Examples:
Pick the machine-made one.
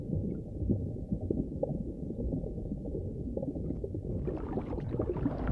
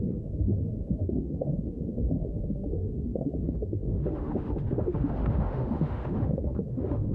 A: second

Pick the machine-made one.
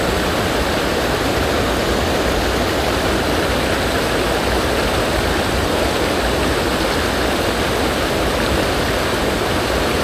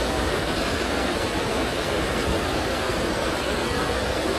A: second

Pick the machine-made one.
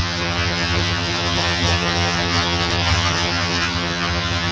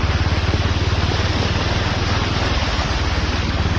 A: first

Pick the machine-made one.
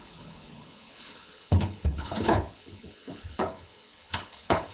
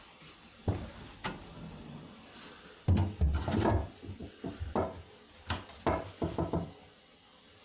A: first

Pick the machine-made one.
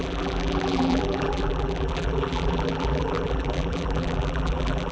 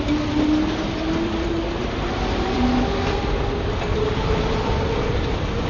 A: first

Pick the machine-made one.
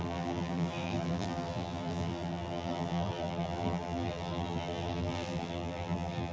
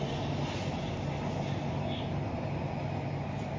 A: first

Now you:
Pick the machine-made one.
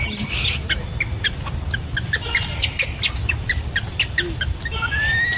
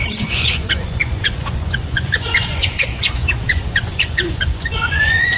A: second